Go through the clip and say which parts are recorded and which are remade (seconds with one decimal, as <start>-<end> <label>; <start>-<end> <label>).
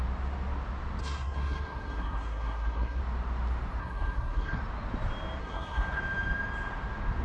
0.0-1.0 recorded; 1.0-3.0 remade; 3.0-3.8 recorded; 3.8-4.6 remade; 4.6-5.4 recorded; 5.4-6.0 remade; 6.0-7.2 recorded